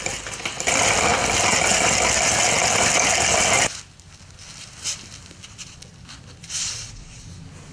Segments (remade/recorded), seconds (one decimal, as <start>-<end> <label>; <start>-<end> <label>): 0.0-6.6 recorded; 6.6-7.2 remade; 7.2-7.7 recorded